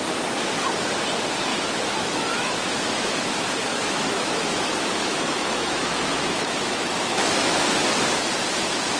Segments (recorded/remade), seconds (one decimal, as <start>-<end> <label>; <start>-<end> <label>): 0.0-1.5 recorded; 1.5-3.3 remade; 3.3-3.7 recorded; 3.7-7.8 remade; 7.8-9.0 recorded